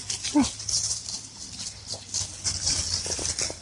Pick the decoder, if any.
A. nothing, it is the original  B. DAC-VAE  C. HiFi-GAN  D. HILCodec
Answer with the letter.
A